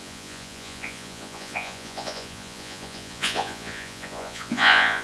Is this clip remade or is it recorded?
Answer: remade